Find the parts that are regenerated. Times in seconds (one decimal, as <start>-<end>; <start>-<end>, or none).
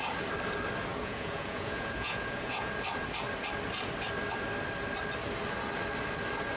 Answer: 0.9-2.7